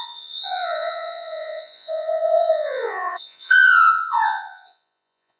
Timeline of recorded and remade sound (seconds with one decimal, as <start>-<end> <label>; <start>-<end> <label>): 0.0-5.4 remade